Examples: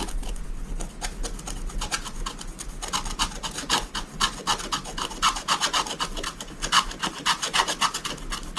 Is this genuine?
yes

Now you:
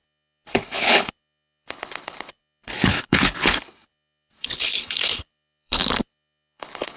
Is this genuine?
no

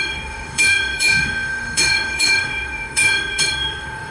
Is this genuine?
no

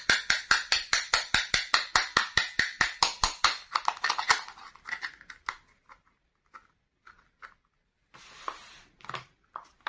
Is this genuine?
yes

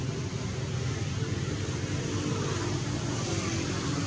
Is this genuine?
yes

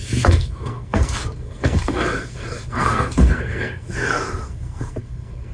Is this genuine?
no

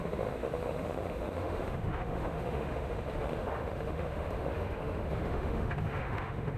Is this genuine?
no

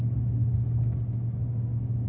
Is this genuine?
yes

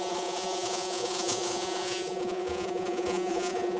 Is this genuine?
no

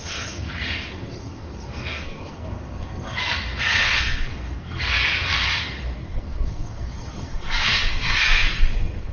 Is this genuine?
no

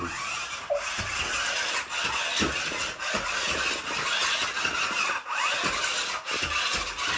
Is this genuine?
yes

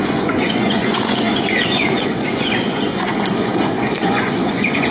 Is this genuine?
no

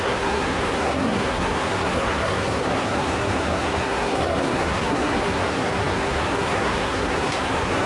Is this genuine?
no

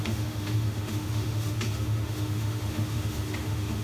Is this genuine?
no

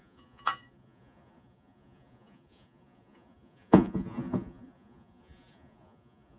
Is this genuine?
no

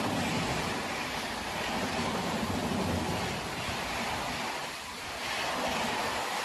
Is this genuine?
yes